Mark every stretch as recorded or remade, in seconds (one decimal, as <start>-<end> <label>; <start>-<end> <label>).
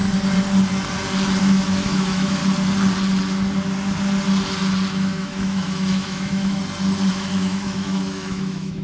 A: 0.0-1.4 recorded; 1.4-2.4 remade; 2.4-4.9 recorded; 4.9-6.6 remade; 6.6-7.1 recorded; 7.1-8.8 remade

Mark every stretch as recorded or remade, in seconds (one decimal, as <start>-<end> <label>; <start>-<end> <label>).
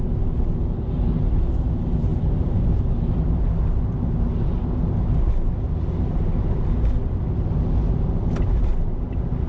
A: 0.0-9.5 recorded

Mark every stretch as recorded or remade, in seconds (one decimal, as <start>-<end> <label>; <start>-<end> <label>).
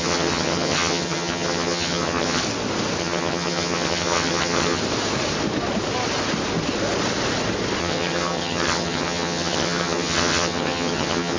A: 0.0-2.4 remade; 2.4-3.0 recorded; 3.0-4.8 remade; 4.8-7.8 recorded; 7.8-11.4 remade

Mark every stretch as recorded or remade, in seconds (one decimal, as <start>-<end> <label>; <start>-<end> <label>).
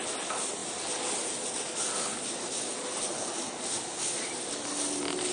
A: 0.0-5.3 recorded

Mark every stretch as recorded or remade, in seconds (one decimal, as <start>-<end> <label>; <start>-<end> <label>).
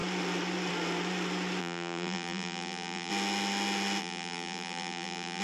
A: 0.0-1.6 recorded; 1.6-3.1 remade; 3.1-4.0 recorded; 4.0-5.4 remade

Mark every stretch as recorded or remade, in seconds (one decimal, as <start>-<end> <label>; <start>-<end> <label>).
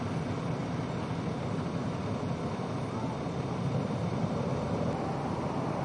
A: 0.0-5.8 recorded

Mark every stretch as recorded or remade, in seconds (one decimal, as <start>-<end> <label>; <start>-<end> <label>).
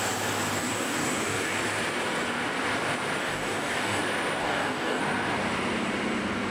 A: 0.0-0.6 recorded; 0.6-1.6 remade; 1.6-3.2 recorded; 3.2-4.0 remade; 4.0-4.4 recorded; 4.4-5.0 remade; 5.0-6.5 recorded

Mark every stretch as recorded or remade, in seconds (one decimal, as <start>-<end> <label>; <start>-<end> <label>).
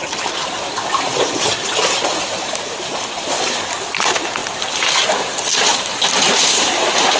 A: 0.0-3.3 remade; 3.3-5.5 recorded; 5.5-6.4 remade; 6.4-7.2 recorded